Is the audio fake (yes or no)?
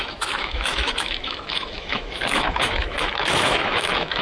yes